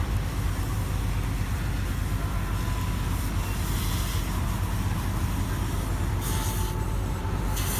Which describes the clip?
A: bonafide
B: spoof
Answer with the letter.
A